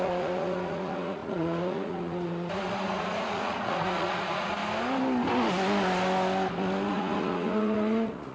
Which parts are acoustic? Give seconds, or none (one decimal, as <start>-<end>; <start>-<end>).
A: 4.6-6.9